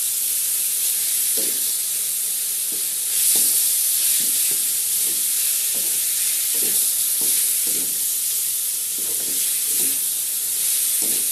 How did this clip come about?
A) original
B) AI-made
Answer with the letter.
A